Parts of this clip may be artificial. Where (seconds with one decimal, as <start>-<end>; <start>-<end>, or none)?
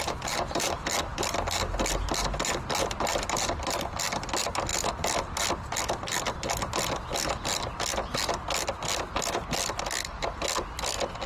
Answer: none